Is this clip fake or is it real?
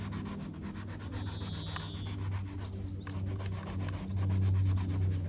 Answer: real